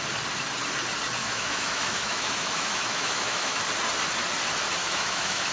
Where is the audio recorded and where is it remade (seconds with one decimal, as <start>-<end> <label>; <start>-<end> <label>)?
0.0-1.2 recorded; 1.2-3.6 remade; 3.6-4.8 recorded; 4.8-5.5 remade